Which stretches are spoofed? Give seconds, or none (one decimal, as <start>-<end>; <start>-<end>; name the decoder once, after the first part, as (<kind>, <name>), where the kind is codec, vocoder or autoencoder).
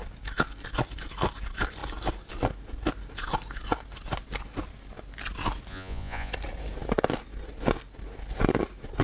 5.7-6.3 (vocoder, Vocos)